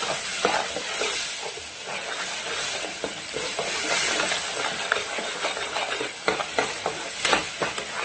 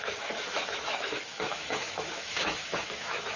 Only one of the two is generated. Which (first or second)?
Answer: second